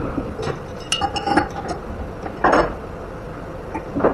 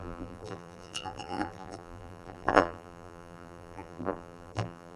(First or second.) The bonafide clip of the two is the first